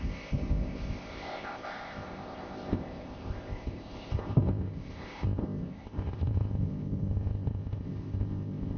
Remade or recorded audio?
remade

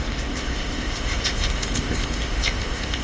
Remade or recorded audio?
remade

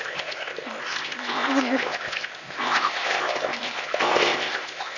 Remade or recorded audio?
remade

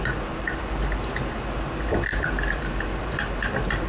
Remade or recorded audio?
recorded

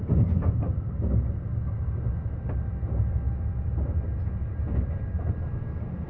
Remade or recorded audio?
recorded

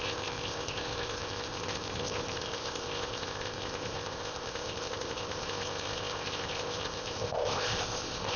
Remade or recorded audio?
remade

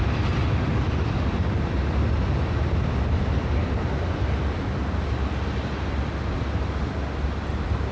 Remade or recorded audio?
recorded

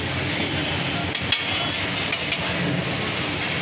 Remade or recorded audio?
recorded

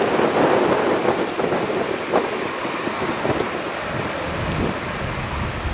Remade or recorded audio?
recorded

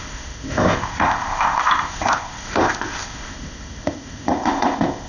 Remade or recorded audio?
remade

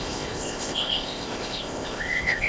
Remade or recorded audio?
remade